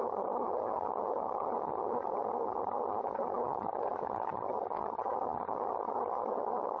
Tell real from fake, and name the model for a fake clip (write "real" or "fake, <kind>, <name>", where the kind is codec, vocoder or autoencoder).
fake, vocoder, HiFi-GAN